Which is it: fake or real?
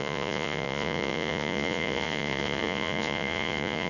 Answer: fake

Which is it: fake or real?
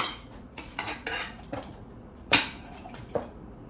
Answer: fake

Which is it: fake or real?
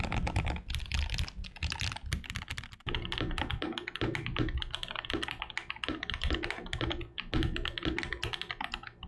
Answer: real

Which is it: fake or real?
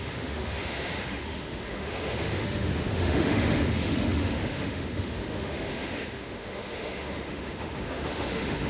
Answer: fake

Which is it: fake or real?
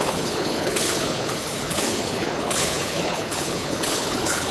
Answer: fake